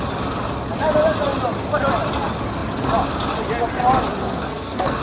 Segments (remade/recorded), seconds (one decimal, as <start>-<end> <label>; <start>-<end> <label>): 0.0-4.2 recorded; 4.2-5.0 remade